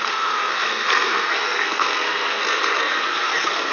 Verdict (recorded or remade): remade